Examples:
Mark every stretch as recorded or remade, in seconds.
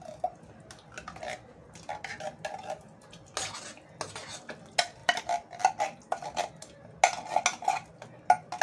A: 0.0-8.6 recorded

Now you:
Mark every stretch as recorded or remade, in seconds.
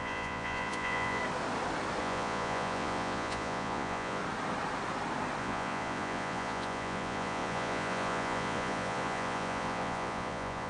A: 0.0-1.2 remade; 1.2-2.0 recorded; 2.0-4.2 remade; 4.2-5.4 recorded; 5.4-10.7 remade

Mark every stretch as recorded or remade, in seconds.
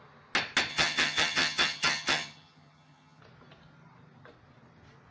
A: 0.0-0.7 recorded; 0.7-3.2 remade; 3.2-5.1 recorded